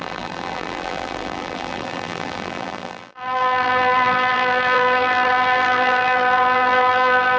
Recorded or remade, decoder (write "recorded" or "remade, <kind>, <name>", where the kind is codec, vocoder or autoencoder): remade, vocoder, BigVGAN v2